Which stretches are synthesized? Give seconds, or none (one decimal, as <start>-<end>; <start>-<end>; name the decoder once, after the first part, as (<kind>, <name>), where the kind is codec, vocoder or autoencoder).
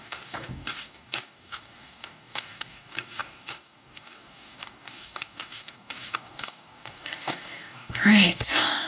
0.0-8.9 (codec, DAC)